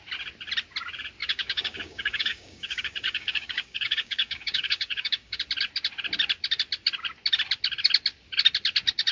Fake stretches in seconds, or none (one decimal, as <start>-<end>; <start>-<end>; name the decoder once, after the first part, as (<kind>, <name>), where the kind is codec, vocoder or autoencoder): 1.2-5.4 (codec, DAC)